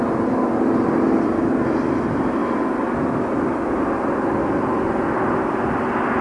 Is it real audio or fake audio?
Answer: real